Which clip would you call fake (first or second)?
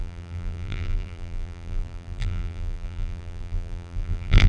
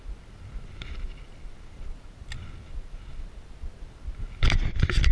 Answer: first